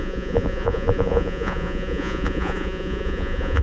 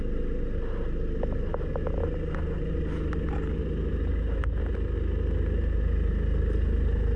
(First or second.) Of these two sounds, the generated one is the first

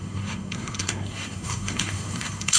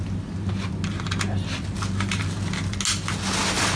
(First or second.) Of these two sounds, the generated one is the first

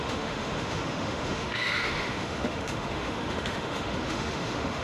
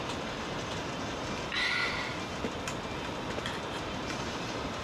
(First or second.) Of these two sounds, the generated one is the first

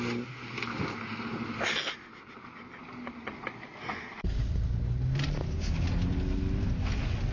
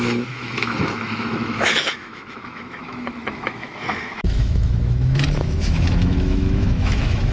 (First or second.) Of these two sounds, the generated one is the second